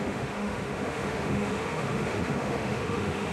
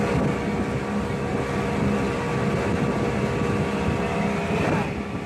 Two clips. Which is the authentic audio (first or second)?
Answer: second